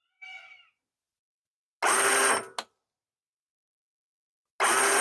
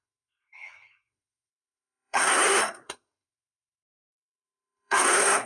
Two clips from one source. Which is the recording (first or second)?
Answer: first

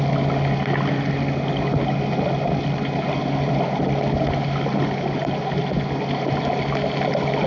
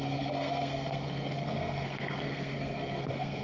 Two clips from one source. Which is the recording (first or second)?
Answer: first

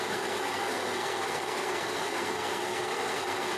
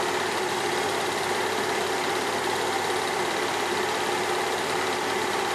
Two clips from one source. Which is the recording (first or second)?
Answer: second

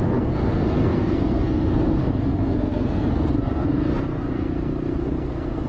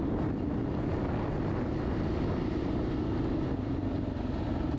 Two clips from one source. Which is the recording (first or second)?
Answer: second